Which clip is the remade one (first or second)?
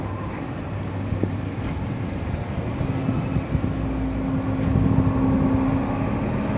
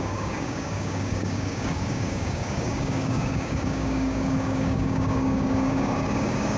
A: second